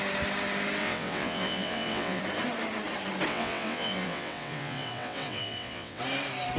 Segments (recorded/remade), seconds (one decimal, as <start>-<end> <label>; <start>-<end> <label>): 0.0-0.8 recorded; 0.8-2.2 remade; 2.2-3.3 recorded; 3.3-6.0 remade; 6.0-6.6 recorded